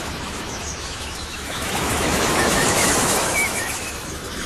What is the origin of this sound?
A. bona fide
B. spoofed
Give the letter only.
B